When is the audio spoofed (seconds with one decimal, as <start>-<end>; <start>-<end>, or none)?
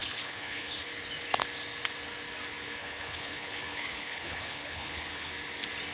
0.0-0.9; 2.8-5.3